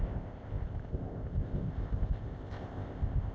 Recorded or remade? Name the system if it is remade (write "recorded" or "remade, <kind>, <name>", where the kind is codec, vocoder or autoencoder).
remade, codec, ZipCodec